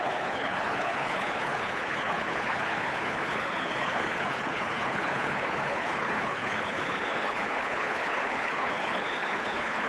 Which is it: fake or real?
fake